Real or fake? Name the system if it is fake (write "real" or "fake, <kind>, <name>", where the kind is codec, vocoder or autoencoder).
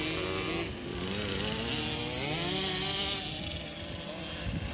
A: real